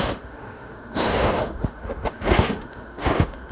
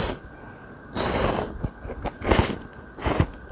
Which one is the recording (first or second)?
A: second